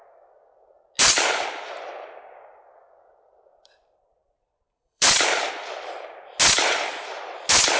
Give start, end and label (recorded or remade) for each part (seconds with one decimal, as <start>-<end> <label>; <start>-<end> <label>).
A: 0.0-3.5 recorded; 3.5-5.5 remade; 5.5-7.8 recorded